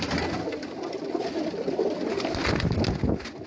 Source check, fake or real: real